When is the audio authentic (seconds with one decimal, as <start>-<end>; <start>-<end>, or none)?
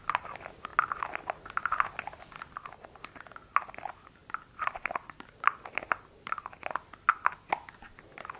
0.0-8.4